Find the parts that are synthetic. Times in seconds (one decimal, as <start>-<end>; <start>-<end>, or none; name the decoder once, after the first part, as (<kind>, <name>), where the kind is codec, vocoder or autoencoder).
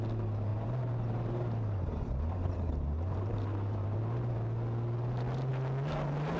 0.5-4.3 (vocoder, BigVGAN v2)